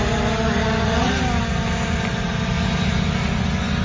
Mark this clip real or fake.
real